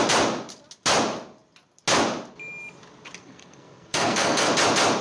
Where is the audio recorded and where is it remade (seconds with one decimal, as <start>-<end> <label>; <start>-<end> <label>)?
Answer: 0.0-3.2 recorded; 3.2-4.5 remade; 4.5-5.0 recorded